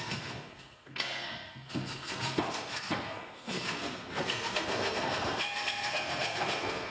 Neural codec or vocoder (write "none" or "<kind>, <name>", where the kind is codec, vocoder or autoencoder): codec, SNAC